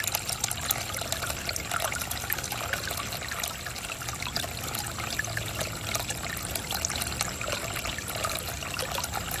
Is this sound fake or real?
real